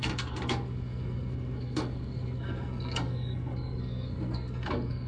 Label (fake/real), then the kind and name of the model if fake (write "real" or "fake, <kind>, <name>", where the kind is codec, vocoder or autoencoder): fake, codec, SNAC